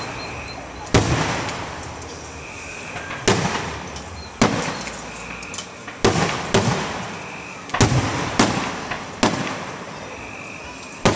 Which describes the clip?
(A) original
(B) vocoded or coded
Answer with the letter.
A